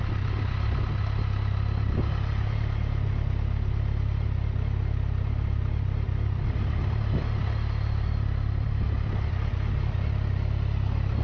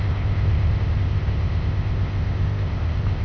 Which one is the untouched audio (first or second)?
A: first